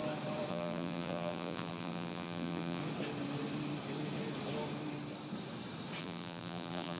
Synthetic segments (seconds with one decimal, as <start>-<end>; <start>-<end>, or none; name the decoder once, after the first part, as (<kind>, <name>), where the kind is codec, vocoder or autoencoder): 0.5-2.8 (vocoder, BigVGAN v2); 6.0-7.0